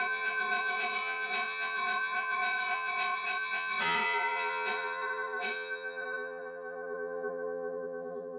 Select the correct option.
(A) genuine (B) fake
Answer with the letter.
B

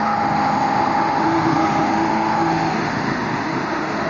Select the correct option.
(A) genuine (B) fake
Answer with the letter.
B